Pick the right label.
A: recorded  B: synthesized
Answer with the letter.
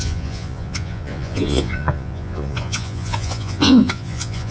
B